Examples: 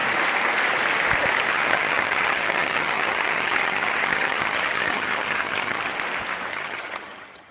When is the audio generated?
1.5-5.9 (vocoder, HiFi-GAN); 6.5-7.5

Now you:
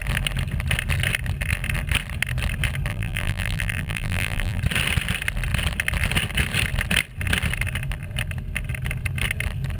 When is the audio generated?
2.9-4.6 (vocoder, BigVGAN v2)

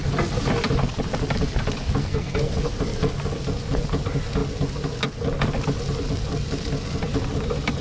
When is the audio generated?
2.0-2.5 (codec, SNAC)

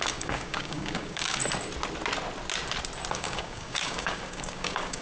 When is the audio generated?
0.0-1.4 (codec, DAC); 3.1-5.0

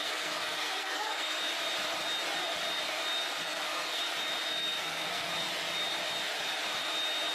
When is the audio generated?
0.0-1.4 (codec, SNAC); 3.4-4.0; 4.5-5.3

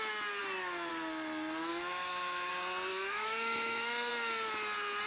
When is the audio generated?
1.7-2.5 (autoencoder, DAC-VAE); 2.9-4.1